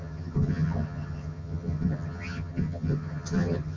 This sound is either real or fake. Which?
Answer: fake